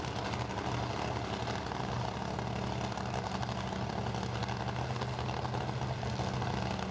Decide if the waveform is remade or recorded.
recorded